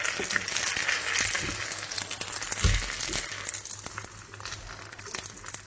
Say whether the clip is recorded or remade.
recorded